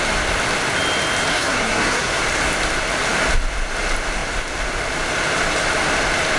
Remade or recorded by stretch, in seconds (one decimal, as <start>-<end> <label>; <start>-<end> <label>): 0.0-1.3 recorded; 1.3-2.2 remade; 2.2-6.4 recorded